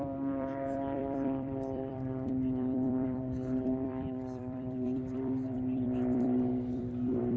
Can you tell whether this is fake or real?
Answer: fake